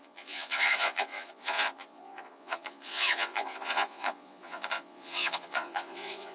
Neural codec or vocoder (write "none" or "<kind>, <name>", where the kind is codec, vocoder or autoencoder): vocoder, Vocos